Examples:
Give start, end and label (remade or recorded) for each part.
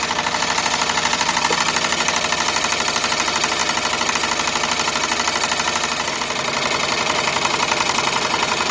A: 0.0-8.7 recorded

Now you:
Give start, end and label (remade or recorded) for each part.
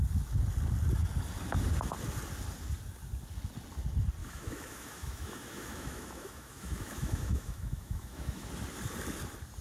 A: 0.0-4.2 recorded; 4.2-8.5 remade; 8.5-9.6 recorded